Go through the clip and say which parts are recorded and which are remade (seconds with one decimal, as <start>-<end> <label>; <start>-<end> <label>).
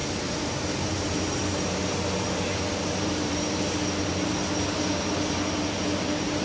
0.0-3.6 remade; 3.6-6.4 recorded